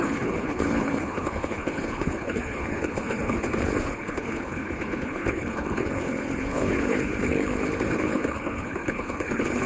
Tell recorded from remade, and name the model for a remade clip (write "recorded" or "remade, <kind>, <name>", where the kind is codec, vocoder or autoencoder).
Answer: remade, codec, HILCodec